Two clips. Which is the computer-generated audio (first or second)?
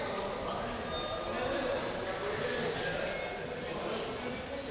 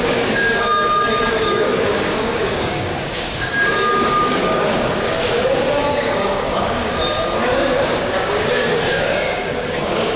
second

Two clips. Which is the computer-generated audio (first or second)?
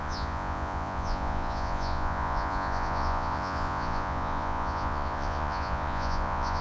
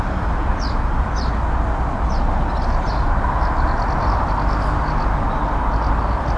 first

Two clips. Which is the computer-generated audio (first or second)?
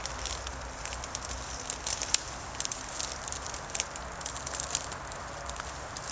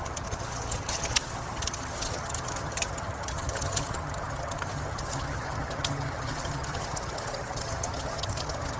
second